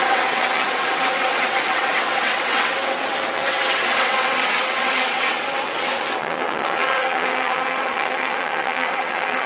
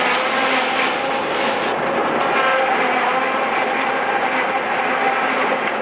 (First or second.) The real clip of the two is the second